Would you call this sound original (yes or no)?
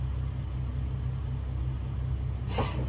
yes